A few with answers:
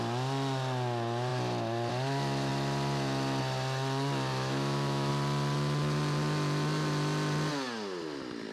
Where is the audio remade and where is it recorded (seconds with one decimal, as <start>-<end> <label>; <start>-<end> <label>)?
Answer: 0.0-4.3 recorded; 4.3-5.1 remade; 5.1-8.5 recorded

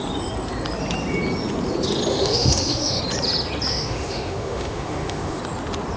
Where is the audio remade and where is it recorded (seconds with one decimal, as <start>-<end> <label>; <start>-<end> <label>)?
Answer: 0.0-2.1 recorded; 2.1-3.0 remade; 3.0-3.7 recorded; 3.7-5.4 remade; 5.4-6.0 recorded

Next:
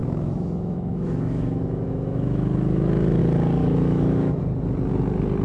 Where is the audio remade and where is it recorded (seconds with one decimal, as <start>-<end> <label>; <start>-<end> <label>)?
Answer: 0.0-3.2 remade; 3.2-3.6 recorded; 3.6-4.4 remade; 4.4-5.4 recorded

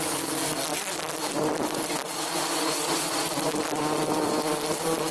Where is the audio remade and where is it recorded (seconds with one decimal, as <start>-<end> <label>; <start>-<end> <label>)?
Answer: 0.0-5.1 recorded

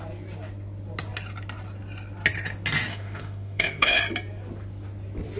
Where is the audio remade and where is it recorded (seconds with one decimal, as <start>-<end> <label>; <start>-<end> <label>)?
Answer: 0.0-2.9 recorded; 2.9-4.0 remade; 4.0-5.4 recorded

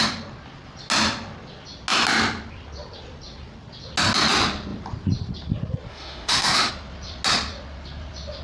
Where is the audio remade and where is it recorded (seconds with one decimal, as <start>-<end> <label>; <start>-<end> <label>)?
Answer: 0.0-5.9 recorded; 5.9-6.7 remade; 6.7-8.4 recorded

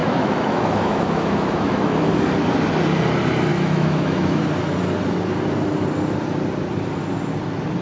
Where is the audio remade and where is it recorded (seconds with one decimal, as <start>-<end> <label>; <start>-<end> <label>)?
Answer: 0.0-2.1 remade; 2.1-3.5 recorded; 3.5-4.4 remade; 4.4-7.8 recorded